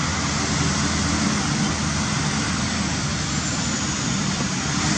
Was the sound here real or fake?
real